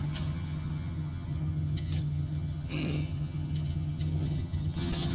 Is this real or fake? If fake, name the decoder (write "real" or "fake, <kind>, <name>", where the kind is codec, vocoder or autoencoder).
fake, vocoder, HiFi-GAN